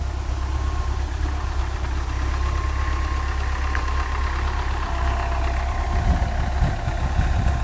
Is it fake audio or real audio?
real